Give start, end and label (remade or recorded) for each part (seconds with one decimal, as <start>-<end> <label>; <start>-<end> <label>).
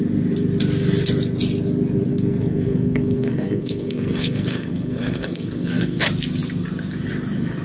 0.0-2.1 recorded; 2.1-6.0 remade; 6.0-7.6 recorded